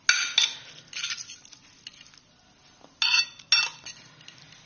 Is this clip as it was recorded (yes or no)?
yes